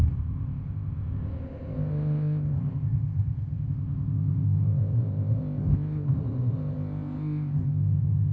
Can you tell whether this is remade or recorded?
remade